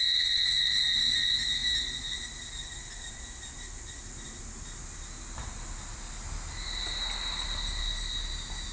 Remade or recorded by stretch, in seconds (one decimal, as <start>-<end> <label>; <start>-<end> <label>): 0.0-8.7 recorded